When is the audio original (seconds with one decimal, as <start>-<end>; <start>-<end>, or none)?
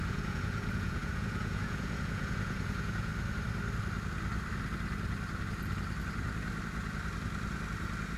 3.1-8.2